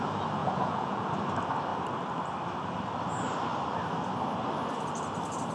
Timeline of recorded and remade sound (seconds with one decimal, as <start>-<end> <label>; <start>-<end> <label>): 0.0-0.4 recorded; 0.4-1.1 remade; 1.1-5.5 recorded